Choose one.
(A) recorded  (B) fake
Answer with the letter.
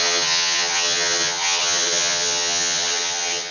B